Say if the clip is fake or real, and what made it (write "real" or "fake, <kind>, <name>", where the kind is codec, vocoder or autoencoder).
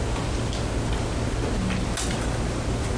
real